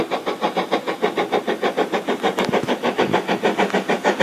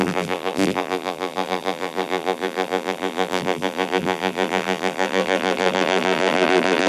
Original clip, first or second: first